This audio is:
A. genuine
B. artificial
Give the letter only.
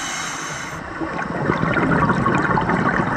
A